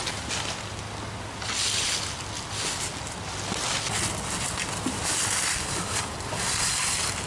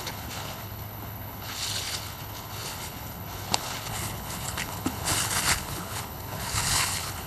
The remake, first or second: second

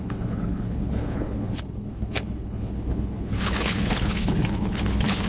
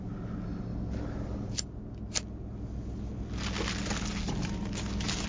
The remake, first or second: first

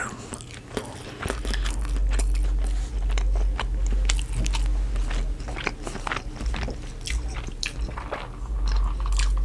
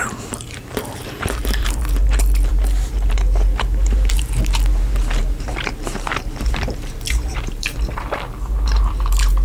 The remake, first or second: second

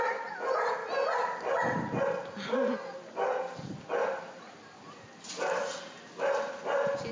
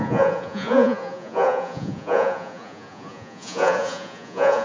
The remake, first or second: second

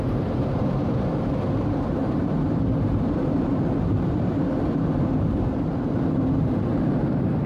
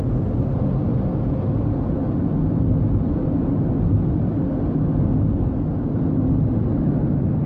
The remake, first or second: first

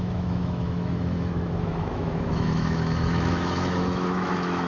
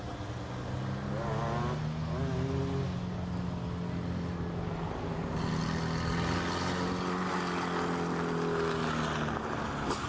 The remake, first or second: first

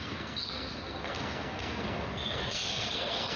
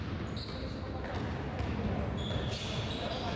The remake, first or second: first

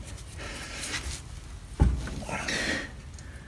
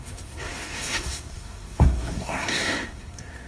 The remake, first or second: second